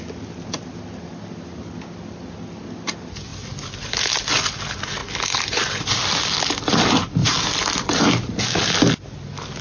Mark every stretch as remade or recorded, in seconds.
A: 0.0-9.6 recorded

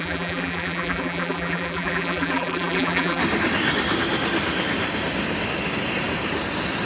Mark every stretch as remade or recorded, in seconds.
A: 0.0-3.2 remade; 3.2-6.9 recorded